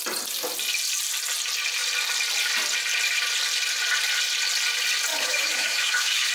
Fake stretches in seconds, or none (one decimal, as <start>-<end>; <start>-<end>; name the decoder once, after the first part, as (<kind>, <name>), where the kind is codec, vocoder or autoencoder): 5.1-6.3 (autoencoder, DAC-VAE)

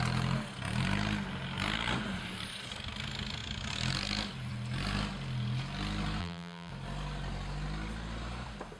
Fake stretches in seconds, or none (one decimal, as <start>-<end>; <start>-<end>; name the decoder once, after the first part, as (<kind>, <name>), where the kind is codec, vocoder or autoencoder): 6.2-6.7 (vocoder, BigVGAN v2)

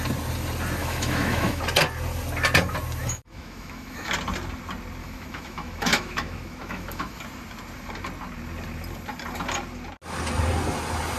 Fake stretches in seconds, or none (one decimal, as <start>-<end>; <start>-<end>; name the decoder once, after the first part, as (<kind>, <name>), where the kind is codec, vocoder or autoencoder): 0.8-1.6 (autoencoder, DAC-VAE); 3.0-4.1; 5.0-7.2

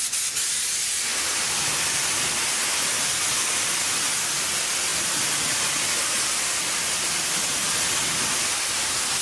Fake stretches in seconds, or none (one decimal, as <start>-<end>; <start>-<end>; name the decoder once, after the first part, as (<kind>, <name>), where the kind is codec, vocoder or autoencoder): none

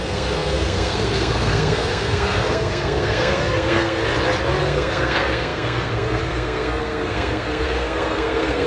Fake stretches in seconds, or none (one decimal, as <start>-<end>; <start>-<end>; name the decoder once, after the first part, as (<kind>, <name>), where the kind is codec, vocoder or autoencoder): 0.0-4.0 (codec, SNAC); 4.6-8.7

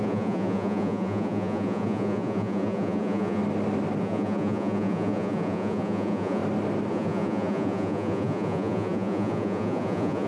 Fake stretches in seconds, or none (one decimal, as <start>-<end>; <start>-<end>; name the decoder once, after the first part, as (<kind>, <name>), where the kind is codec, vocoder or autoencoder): 0.0-3.4 (vocoder, Vocos); 4.0-6.4; 6.9-10.3

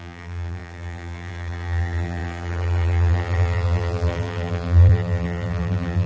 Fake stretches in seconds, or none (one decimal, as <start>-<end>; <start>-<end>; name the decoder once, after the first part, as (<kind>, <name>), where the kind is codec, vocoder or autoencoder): 0.0-6.1 (vocoder, BigVGAN v2)

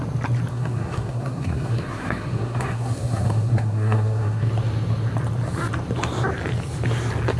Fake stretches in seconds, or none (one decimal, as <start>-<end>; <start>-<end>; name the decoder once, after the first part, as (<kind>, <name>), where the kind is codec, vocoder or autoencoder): 0.5-4.5 (codec, SNAC)